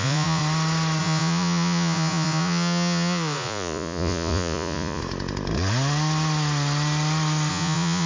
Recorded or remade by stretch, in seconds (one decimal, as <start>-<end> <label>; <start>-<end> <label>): 0.0-0.4 remade; 0.4-1.0 recorded; 1.0-5.0 remade; 5.0-7.5 recorded; 7.5-8.1 remade